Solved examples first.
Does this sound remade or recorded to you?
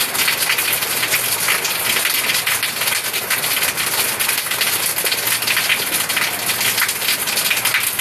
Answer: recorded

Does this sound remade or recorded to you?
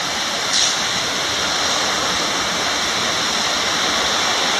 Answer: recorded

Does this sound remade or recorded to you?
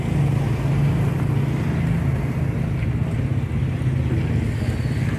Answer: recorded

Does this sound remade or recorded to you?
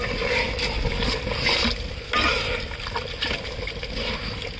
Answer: recorded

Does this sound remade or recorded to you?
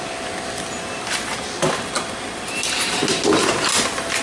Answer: recorded